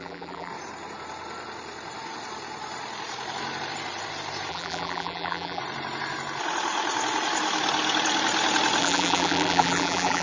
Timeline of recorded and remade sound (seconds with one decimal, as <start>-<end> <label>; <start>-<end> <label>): 0.0-0.5 remade; 0.5-4.5 recorded; 4.5-5.6 remade; 5.6-8.8 recorded; 8.8-10.2 remade